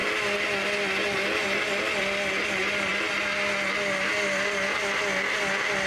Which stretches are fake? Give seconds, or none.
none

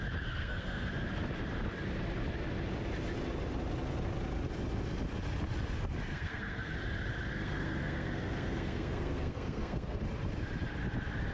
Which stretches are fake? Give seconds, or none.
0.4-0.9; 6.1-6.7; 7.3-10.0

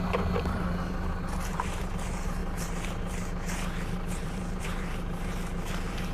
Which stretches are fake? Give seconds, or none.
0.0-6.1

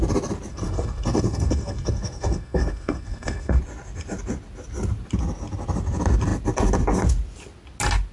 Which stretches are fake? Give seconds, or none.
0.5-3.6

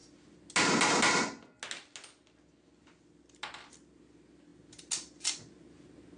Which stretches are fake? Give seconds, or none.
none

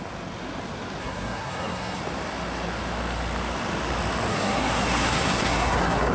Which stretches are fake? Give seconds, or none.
1.0-2.0; 4.3-6.1

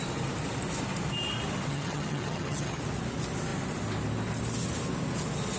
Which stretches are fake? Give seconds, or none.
1.7-2.8

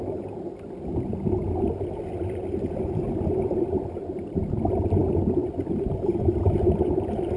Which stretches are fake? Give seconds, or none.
none